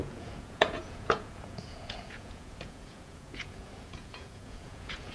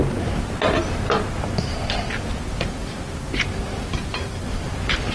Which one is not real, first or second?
first